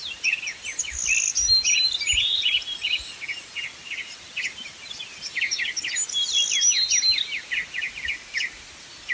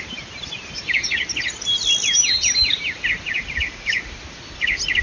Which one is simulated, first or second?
second